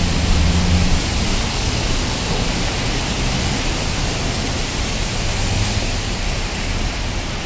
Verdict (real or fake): real